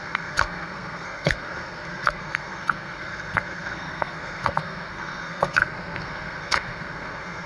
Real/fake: fake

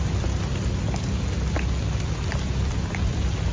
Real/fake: real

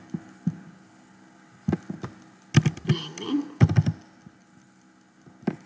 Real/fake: real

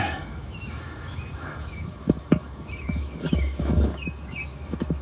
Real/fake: fake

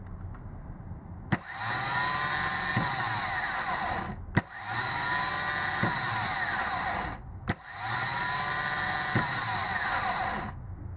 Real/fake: real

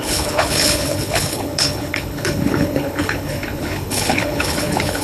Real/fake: fake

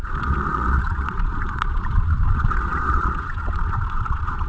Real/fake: fake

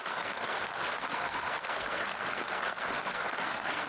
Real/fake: fake